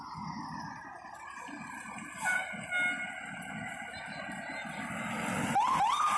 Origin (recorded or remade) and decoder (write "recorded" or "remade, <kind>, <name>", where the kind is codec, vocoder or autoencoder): recorded